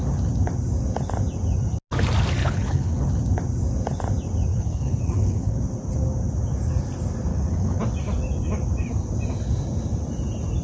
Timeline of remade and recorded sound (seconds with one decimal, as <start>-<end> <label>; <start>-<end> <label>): 0.0-2.4 recorded; 2.4-3.1 remade; 3.1-4.5 recorded; 4.5-5.6 remade; 5.6-7.3 recorded; 7.3-7.8 remade; 7.8-10.6 recorded